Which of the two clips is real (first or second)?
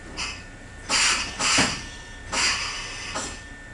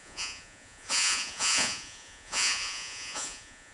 first